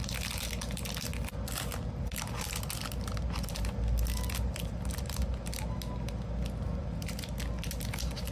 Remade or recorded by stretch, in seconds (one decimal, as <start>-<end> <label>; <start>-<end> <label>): 0.0-8.3 recorded